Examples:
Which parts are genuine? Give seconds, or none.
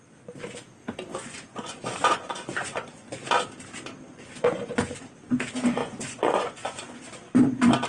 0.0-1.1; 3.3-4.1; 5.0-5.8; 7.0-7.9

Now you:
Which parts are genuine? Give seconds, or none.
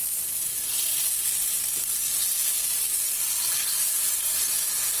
0.0-5.0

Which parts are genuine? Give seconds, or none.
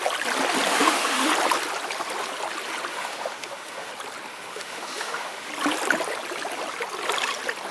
0.0-0.7; 1.3-2.9; 3.9-4.3; 5.5-7.7